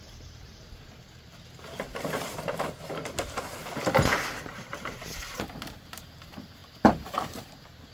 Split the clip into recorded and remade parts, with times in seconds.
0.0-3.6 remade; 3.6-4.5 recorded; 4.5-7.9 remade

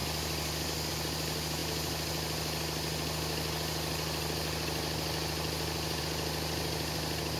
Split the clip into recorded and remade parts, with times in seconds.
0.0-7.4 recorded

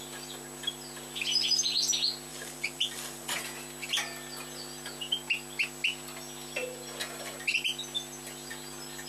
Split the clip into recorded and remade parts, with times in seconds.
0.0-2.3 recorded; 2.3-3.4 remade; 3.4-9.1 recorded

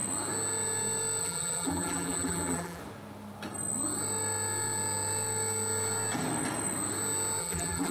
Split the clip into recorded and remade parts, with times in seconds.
0.0-1.2 recorded; 1.2-2.8 remade; 2.8-7.4 recorded; 7.4-7.9 remade

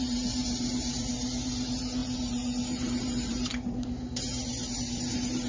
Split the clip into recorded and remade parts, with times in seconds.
0.0-5.5 remade

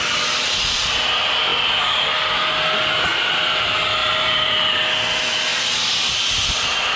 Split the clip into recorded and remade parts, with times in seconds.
0.0-4.0 recorded; 4.0-4.8 remade; 4.8-7.0 recorded